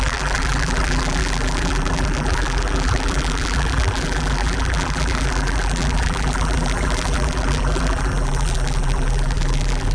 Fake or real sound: fake